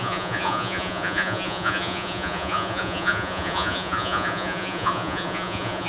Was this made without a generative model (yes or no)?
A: no